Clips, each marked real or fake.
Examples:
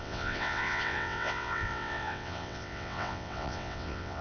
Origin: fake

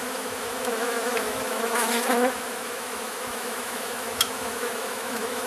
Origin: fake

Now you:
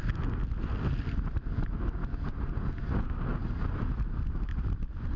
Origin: real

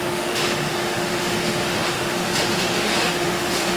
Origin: fake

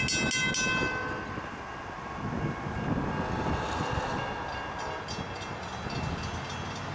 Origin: real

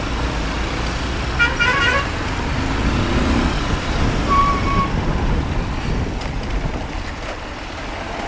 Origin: real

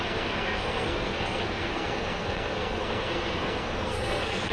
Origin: fake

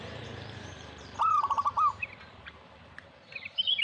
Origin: fake